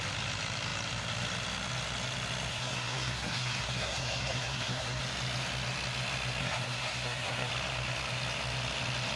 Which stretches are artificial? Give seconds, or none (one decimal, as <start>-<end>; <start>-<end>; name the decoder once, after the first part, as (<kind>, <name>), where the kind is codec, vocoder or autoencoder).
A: 2.5-5.0 (codec, SNAC); 6.4-7.5